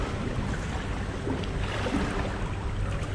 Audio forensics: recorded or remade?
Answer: recorded